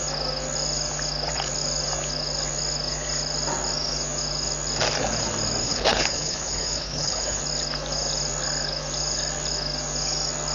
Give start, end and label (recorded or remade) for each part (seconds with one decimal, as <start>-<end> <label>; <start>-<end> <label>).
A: 0.0-5.6 recorded; 5.6-7.4 remade; 7.4-10.5 recorded